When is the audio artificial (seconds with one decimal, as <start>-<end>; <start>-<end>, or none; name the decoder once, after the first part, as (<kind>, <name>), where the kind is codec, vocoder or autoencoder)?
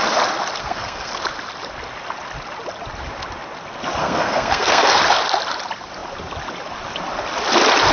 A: 0.6-1.1 (codec, SNAC); 4.0-5.0